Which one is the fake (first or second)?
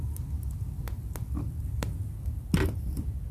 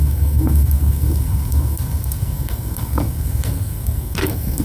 second